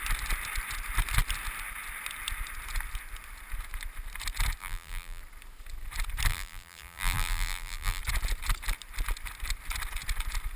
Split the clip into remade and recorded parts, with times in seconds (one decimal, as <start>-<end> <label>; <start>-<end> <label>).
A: 0.0-4.6 recorded; 4.6-5.2 remade; 5.2-6.3 recorded; 6.3-8.0 remade; 8.0-10.6 recorded